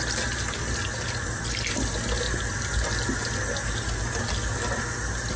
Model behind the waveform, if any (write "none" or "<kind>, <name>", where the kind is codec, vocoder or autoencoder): none